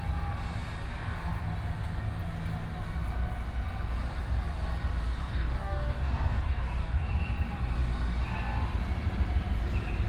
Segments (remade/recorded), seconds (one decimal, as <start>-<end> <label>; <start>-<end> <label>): 0.0-5.2 recorded; 5.2-7.1 remade; 7.1-10.1 recorded